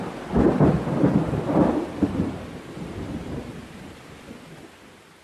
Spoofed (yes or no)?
no